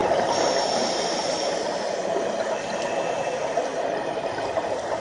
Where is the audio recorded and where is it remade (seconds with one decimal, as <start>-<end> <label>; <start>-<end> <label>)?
0.0-3.0 remade; 3.0-3.7 recorded; 3.7-5.0 remade